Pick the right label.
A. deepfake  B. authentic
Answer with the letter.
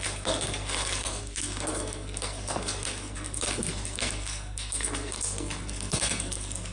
A